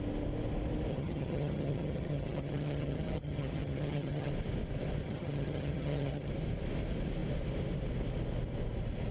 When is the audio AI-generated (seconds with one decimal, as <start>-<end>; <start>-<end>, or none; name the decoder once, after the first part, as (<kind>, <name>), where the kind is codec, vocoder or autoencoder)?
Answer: 0.9-4.3 (vocoder, HiFi-GAN); 5.0-6.3